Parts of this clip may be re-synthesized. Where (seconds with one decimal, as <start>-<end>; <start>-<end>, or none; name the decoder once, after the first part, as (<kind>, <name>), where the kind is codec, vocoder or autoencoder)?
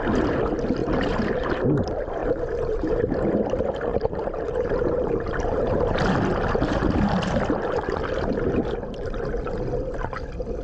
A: 0.8-1.5 (vocoder, BigVGAN v2); 2.2-2.9; 3.9-6.7